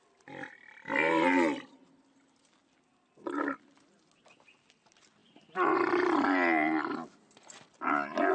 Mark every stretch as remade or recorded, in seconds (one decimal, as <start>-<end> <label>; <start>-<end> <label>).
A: 0.0-8.3 recorded